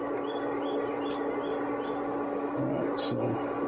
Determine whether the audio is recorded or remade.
recorded